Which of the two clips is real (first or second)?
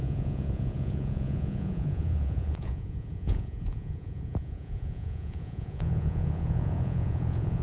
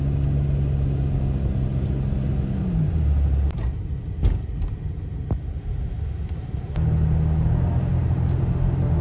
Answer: second